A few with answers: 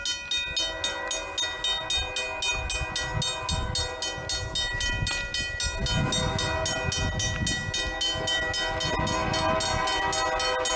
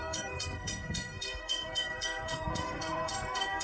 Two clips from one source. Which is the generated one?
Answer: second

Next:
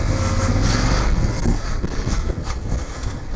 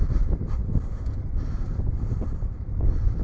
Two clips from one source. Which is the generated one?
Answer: first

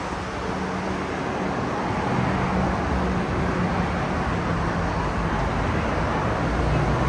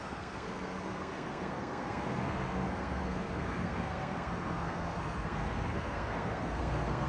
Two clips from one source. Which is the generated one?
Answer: second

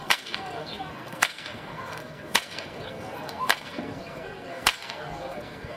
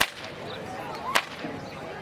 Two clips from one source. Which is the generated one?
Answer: first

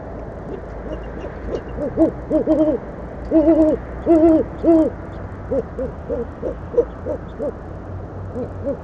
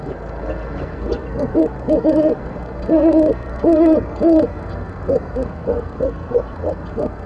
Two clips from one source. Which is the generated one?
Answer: second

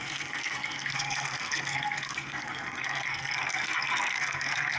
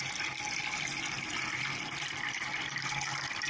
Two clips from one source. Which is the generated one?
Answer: first